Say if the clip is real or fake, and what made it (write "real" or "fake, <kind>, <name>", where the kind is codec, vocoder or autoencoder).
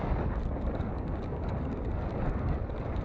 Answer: fake, codec, DAC